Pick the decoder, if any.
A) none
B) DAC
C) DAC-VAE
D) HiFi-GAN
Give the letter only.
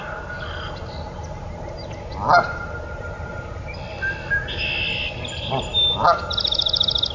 A